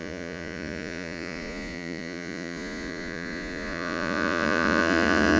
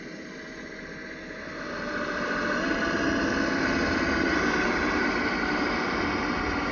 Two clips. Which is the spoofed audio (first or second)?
first